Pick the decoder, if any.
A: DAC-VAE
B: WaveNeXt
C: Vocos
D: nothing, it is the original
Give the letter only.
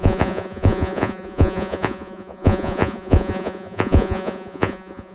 C